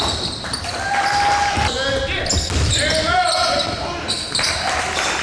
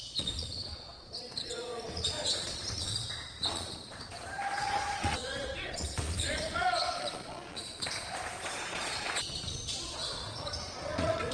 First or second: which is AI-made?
second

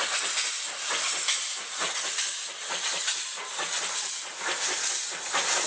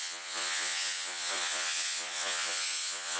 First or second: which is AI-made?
second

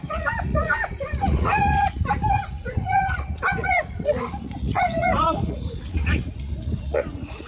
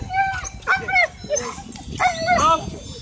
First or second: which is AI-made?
first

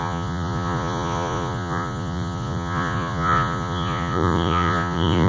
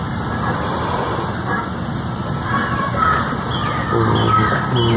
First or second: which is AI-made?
first